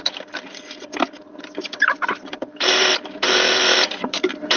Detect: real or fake fake